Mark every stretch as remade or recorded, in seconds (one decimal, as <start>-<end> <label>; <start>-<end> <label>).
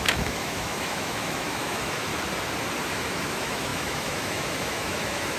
0.0-2.1 remade; 2.1-2.9 recorded; 2.9-5.4 remade